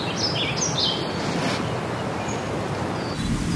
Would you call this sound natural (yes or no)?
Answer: yes